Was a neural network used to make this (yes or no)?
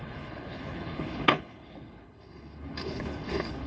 yes